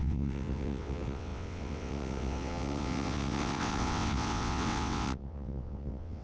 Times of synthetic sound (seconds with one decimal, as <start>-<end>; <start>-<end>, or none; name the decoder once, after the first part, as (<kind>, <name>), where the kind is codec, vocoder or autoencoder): 0.0-6.2 (vocoder, WaveNeXt)